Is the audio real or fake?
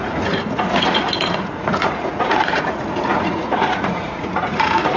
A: fake